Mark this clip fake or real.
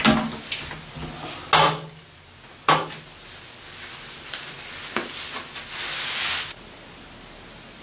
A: real